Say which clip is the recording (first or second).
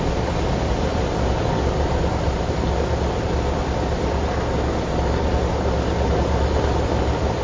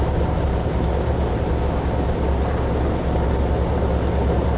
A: second